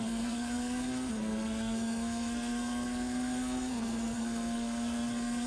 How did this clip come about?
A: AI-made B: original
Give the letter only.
A